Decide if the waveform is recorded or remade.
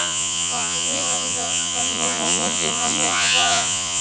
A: remade